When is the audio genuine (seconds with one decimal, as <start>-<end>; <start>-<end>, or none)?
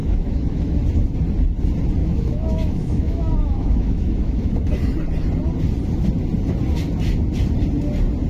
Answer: 0.8-2.0; 4.7-8.3